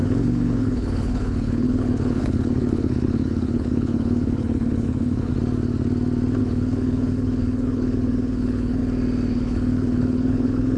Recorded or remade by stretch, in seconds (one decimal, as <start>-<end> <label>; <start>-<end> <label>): 0.0-5.3 remade; 5.3-6.4 recorded; 6.4-8.8 remade; 8.8-9.3 recorded; 9.3-10.8 remade

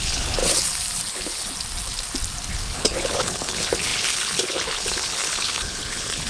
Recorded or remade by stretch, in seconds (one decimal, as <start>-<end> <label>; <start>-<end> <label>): 0.0-0.4 remade; 0.4-1.1 recorded; 1.1-1.5 remade; 1.5-2.5 recorded; 2.5-6.3 remade

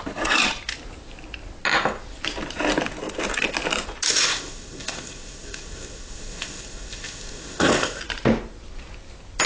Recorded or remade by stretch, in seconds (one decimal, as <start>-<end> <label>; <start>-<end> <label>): 0.0-4.1 recorded; 4.1-8.0 remade; 8.0-9.5 recorded

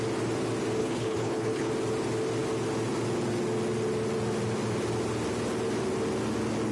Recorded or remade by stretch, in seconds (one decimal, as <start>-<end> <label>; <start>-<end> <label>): 0.0-0.8 recorded; 0.8-1.7 remade; 1.7-6.7 recorded

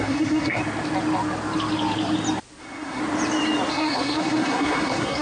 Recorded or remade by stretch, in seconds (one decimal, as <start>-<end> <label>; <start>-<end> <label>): 0.0-0.6 remade; 0.6-2.6 recorded; 2.6-3.0 remade; 3.0-3.7 recorded; 3.7-5.2 remade